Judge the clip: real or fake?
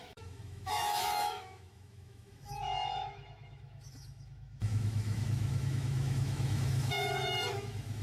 fake